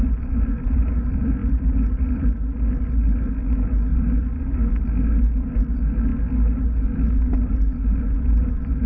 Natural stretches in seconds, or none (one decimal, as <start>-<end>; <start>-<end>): 0.0-1.4; 2.0-8.9